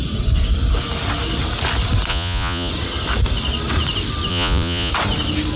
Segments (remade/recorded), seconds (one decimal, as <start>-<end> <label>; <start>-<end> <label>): 0.0-2.1 recorded; 2.1-2.7 remade; 2.7-4.3 recorded; 4.3-4.9 remade; 4.9-5.6 recorded